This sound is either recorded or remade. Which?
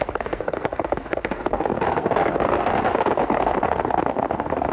remade